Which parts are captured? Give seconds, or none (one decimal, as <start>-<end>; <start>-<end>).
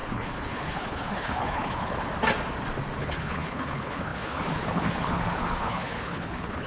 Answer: 2.1-3.0